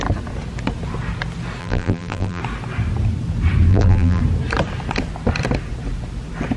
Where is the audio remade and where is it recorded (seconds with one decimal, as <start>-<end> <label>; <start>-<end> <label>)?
0.0-1.6 recorded; 1.6-2.4 remade; 2.4-3.7 recorded; 3.7-4.2 remade; 4.2-6.6 recorded